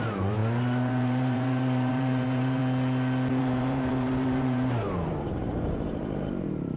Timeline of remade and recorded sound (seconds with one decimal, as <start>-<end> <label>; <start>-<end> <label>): 0.0-2.6 remade; 2.6-3.4 recorded; 3.4-6.8 remade

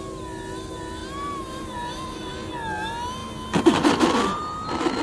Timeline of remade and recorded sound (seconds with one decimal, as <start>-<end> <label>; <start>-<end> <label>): 0.0-1.0 recorded; 1.0-2.3 remade; 2.3-5.0 recorded

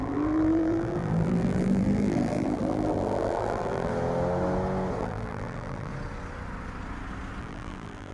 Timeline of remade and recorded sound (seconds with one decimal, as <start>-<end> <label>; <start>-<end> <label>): 0.0-3.9 remade; 3.9-5.0 recorded; 5.0-5.9 remade; 5.9-7.4 recorded; 7.4-8.1 remade

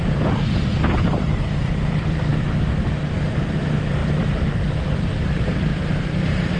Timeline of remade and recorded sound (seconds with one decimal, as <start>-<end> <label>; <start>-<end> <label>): 0.0-2.3 remade; 2.3-3.4 recorded; 3.4-4.0 remade; 4.0-5.2 recorded; 5.2-5.7 remade; 5.7-6.6 recorded

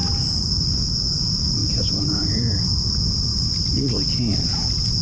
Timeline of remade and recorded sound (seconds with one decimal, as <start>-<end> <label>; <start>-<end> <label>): 0.0-0.5 remade; 0.5-1.6 recorded; 1.6-2.8 remade; 2.8-3.3 recorded; 3.3-3.9 remade; 3.9-5.0 recorded